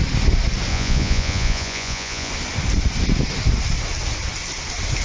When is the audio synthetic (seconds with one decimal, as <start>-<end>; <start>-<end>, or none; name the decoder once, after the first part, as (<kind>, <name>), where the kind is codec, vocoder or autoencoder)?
0.7-2.3 (vocoder, Vocos)